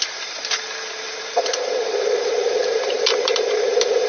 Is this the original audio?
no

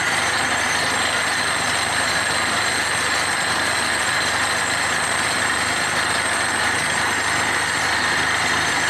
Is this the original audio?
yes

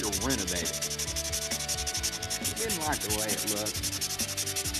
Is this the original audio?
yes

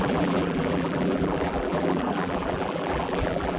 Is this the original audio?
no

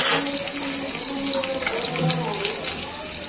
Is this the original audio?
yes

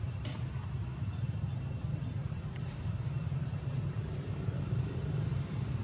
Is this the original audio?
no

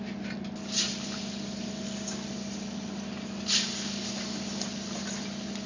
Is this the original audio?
yes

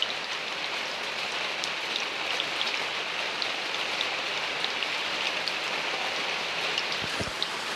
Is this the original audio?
yes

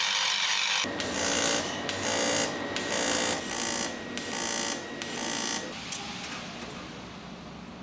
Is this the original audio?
yes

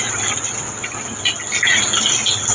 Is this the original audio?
yes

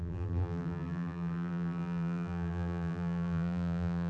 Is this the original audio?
no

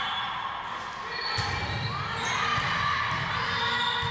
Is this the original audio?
yes